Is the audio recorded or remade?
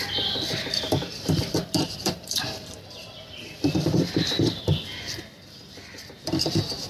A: remade